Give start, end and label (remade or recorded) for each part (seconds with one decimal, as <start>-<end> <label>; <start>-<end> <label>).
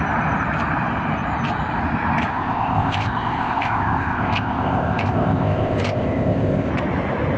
0.0-2.3 recorded; 2.3-6.7 remade; 6.7-7.4 recorded